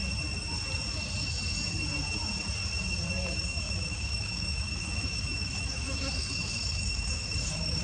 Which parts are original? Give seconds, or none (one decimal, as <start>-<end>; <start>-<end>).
0.0-3.3